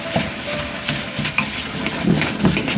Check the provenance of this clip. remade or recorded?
remade